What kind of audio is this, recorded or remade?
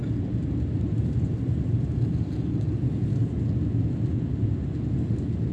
recorded